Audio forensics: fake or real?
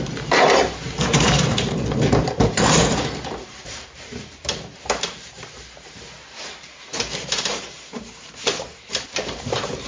fake